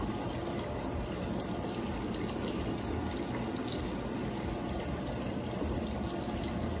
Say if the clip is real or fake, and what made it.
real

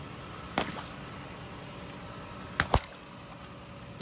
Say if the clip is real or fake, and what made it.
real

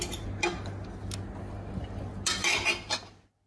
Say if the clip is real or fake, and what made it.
real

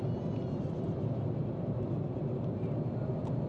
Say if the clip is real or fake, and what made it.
real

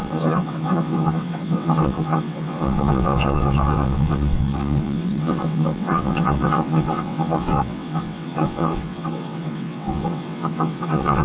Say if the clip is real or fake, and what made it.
fake, vocoder, WaveNeXt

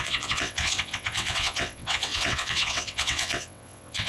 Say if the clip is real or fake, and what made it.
fake, vocoder, WaveNeXt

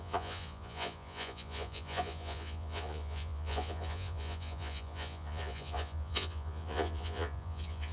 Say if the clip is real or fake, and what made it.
fake, vocoder, Vocos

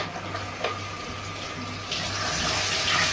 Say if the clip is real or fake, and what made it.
real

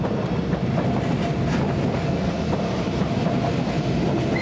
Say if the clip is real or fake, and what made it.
real